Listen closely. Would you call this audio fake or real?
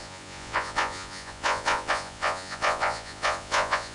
fake